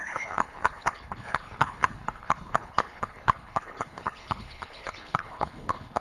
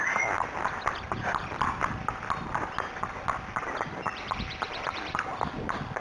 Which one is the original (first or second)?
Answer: second